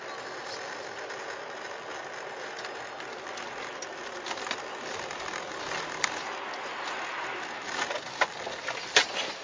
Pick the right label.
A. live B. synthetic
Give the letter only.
A